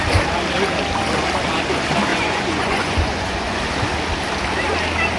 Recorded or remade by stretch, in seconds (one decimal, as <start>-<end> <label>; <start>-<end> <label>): 0.0-2.1 recorded; 2.1-3.6 remade; 3.6-5.2 recorded